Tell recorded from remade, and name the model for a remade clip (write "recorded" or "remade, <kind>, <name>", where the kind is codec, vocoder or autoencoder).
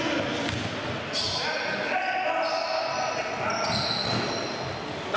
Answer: recorded